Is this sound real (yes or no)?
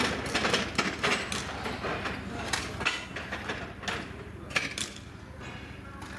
yes